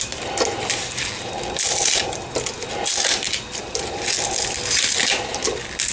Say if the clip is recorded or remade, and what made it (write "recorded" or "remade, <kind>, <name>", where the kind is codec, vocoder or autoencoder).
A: recorded